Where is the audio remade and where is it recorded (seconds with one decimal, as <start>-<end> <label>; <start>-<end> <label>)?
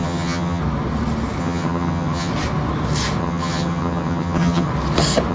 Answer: 0.0-0.6 remade; 0.6-1.4 recorded; 1.4-2.3 remade; 2.3-3.2 recorded; 3.2-4.7 remade; 4.7-5.3 recorded